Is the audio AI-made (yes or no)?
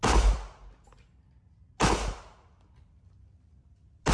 no